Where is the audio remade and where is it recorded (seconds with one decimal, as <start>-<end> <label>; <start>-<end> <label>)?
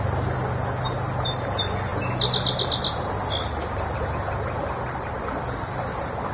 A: 0.0-6.3 recorded